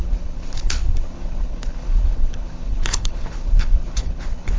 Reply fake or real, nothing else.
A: fake